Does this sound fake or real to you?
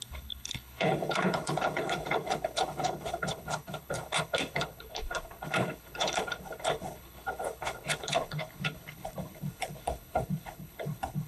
fake